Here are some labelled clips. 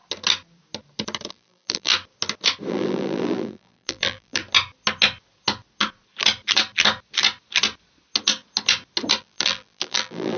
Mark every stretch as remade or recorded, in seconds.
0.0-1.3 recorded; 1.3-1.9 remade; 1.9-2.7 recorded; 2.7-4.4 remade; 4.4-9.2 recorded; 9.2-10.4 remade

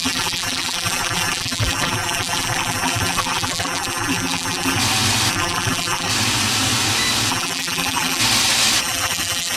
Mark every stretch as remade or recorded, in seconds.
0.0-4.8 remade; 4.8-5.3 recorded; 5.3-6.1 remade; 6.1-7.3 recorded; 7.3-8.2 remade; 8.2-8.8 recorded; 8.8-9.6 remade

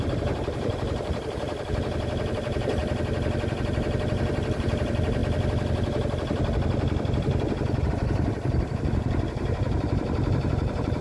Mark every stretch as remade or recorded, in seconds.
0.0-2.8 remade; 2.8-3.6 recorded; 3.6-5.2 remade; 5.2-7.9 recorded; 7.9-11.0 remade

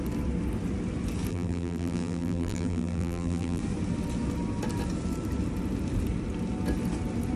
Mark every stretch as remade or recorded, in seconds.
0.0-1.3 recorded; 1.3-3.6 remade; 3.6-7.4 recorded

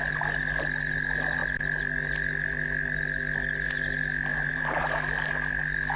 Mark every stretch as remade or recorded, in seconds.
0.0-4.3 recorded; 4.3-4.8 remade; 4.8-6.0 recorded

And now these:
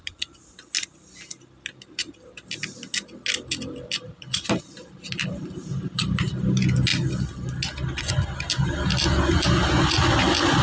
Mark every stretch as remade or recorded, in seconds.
0.0-10.6 recorded

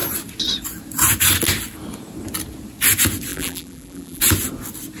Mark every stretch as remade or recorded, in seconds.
0.0-3.3 recorded; 3.3-4.2 remade; 4.2-5.0 recorded

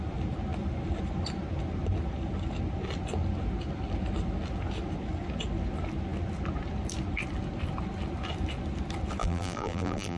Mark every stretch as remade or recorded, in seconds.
0.0-9.2 recorded; 9.2-10.2 remade